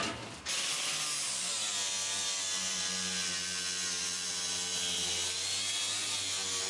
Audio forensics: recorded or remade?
recorded